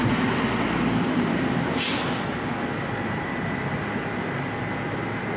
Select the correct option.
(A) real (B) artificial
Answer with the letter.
A